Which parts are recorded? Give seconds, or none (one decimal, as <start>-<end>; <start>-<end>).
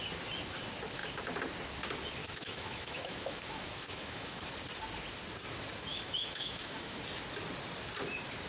0.0-2.2; 4.5-5.9; 7.0-8.5